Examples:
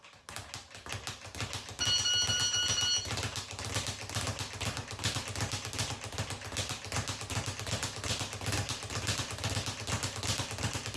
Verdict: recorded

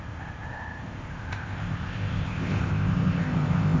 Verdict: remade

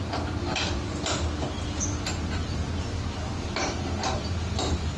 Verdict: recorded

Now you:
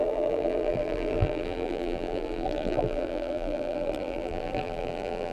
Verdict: remade